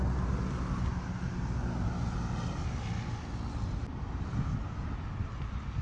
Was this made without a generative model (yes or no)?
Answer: yes